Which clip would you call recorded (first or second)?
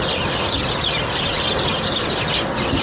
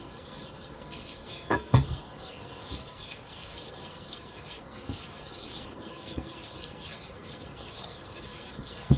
first